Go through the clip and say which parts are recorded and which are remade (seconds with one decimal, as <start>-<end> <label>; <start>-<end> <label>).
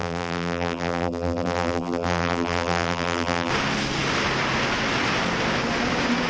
0.0-3.5 remade; 3.5-6.3 recorded